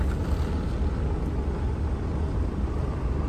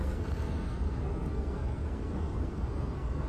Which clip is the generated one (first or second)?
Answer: second